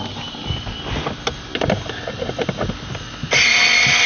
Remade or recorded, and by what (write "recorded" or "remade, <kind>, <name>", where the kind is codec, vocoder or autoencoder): recorded